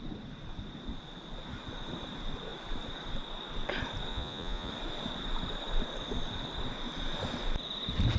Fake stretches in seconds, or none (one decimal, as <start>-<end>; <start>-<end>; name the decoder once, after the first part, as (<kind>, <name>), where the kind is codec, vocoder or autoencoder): 4.1-4.7 (vocoder, Vocos)

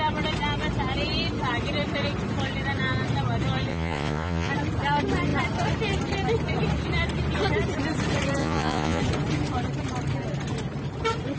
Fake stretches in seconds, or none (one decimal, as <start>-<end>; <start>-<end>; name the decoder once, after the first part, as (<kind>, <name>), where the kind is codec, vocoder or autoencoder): 3.7-4.5 (vocoder, Vocos); 8.4-9.0

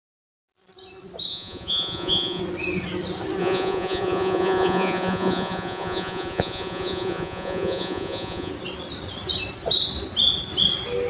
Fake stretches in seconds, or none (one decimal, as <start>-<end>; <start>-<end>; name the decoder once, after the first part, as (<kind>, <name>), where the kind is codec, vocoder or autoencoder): 1.3-2.4 (vocoder, Vocos); 3.4-8.5

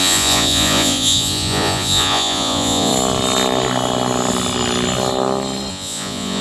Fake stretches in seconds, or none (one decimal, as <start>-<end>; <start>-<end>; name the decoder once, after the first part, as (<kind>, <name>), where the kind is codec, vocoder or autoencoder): 0.0-2.9 (vocoder, Vocos); 5.7-6.4

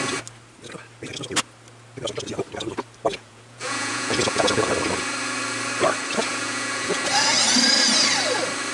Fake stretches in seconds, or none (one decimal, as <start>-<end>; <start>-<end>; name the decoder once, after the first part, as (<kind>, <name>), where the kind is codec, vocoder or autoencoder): 3.1-4.7 (vocoder, Vocos); 6.3-7.0